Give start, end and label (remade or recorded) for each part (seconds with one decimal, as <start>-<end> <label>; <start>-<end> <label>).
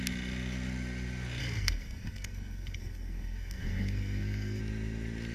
0.0-1.4 recorded; 1.4-4.6 remade; 4.6-5.3 recorded